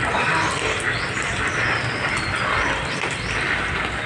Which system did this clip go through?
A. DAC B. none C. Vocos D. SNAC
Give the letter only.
B